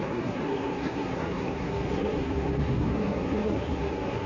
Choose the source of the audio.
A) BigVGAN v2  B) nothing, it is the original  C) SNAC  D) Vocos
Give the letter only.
C